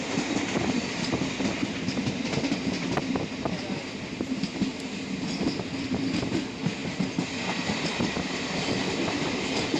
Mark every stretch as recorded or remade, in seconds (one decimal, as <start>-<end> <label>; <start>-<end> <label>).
0.0-9.8 recorded